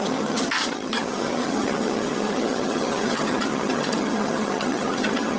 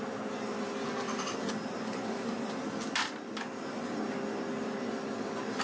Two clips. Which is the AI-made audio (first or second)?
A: first